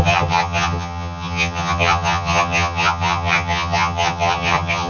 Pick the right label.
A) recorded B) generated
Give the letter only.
B